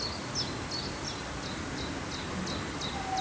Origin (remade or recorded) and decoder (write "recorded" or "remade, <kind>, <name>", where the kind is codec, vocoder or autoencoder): recorded